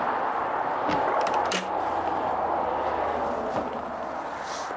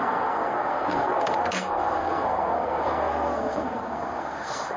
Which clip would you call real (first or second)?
first